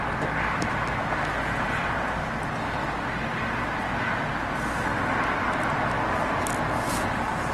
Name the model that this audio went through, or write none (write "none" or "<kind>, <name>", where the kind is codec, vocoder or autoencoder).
none